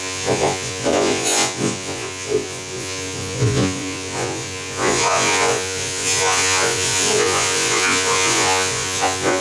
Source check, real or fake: fake